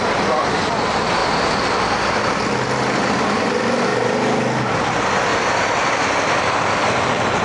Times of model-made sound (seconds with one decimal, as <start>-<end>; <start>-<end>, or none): none